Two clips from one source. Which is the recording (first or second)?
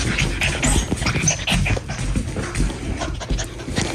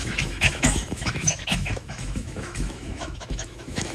first